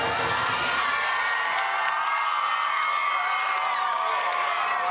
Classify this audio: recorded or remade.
recorded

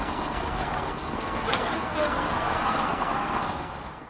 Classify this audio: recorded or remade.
remade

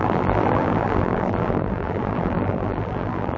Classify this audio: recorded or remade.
remade